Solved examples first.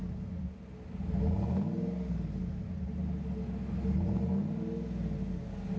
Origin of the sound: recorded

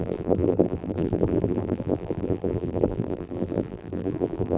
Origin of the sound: remade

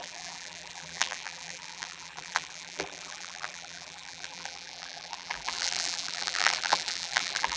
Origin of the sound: remade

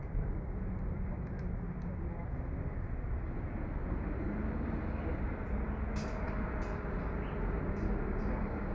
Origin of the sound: recorded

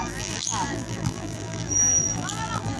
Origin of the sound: remade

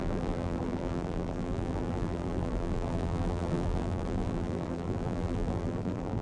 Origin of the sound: remade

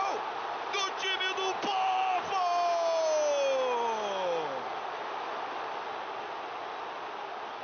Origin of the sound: recorded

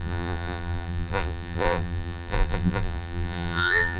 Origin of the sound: remade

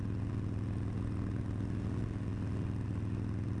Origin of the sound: recorded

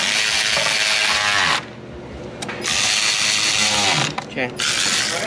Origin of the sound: recorded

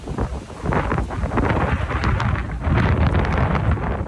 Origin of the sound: recorded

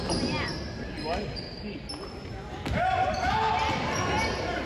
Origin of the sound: recorded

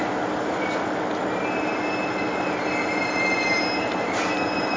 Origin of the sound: recorded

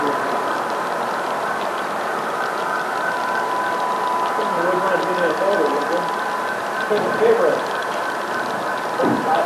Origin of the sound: remade